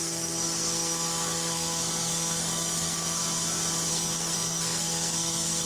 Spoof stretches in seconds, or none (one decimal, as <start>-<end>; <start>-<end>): 0.0-3.2; 3.9-5.7